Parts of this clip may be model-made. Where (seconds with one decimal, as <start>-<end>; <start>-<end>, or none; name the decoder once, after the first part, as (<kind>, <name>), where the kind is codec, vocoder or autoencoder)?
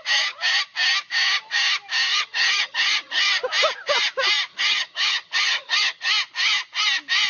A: 2.1-3.3 (vocoder, HiFi-GAN); 4.5-6.1